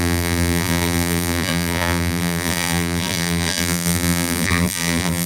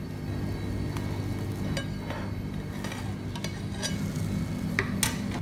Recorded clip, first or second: second